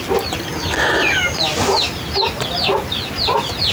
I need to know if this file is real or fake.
real